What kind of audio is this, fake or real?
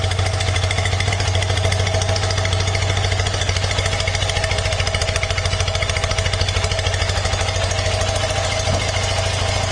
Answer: real